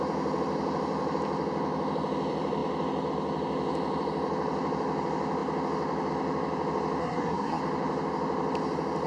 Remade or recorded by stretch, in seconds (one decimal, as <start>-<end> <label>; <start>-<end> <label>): 0.0-7.0 recorded; 7.0-7.6 remade; 7.6-9.1 recorded